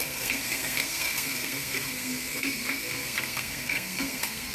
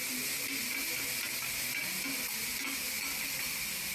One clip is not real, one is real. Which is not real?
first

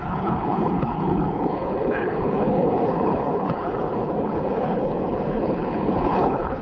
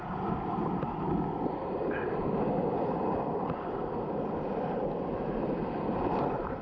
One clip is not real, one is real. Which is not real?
first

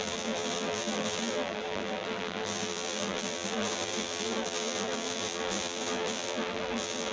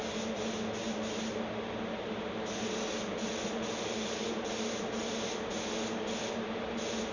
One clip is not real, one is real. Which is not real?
first